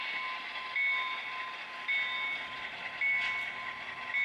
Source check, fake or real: real